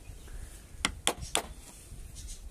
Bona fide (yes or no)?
yes